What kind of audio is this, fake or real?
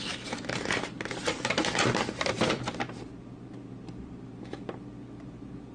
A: real